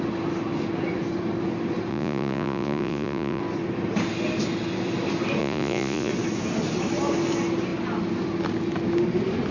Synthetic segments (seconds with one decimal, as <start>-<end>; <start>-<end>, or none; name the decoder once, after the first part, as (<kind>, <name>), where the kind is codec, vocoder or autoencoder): 1.9-3.4 (vocoder, Vocos); 5.4-6.1